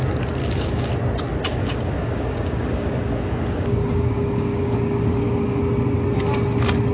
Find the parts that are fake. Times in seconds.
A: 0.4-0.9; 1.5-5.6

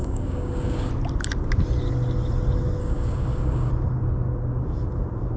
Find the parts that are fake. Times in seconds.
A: 0.0-0.9; 2.8-3.7

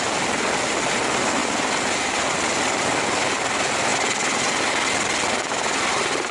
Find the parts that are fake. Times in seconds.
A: none

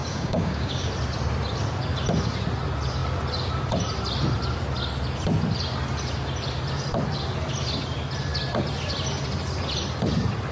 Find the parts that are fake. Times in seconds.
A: 0.0-0.9

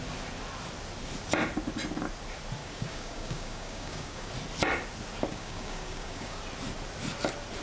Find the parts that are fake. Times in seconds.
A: 2.6-4.3; 5.3-6.4